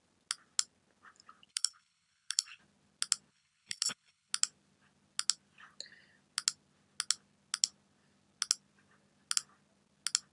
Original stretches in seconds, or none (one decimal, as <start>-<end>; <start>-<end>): 0.0-1.5; 2.6-3.3; 4.3-10.3